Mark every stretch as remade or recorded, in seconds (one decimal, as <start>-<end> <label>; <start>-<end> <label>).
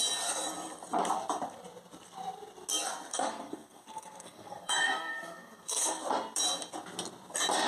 0.0-3.1 recorded; 3.1-6.0 remade; 6.0-7.7 recorded